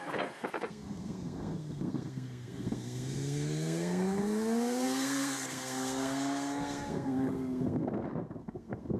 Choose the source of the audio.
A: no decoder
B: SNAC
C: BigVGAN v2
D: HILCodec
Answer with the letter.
B